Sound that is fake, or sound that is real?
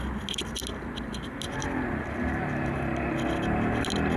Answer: real